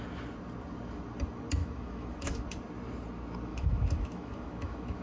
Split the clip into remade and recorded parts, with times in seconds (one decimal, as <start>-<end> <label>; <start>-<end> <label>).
0.0-1.6 recorded; 1.6-2.4 remade; 2.4-3.5 recorded; 3.5-5.0 remade